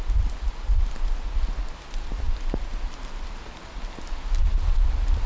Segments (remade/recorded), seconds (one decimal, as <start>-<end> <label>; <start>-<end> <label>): 0.0-5.3 recorded